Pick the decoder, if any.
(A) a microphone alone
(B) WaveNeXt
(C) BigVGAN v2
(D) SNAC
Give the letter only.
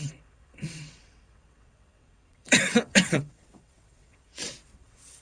B